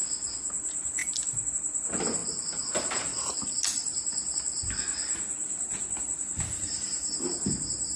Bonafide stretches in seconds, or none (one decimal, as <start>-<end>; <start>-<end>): 0.0-0.5; 1.0-1.5; 2.2-2.7; 3.1-6.0